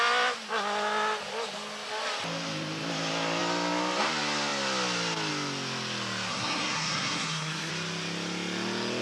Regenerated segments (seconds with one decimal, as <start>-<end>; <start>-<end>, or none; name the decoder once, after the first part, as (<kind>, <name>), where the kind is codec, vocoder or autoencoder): 6.3-7.7 (codec, SNAC)